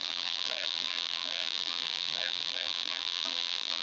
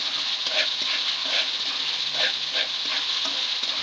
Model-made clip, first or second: first